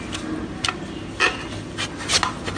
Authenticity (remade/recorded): recorded